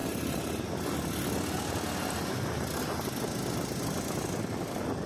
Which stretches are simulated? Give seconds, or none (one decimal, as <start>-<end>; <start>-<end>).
0.0-0.5